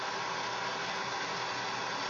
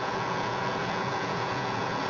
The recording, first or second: first